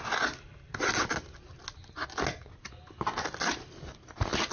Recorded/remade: recorded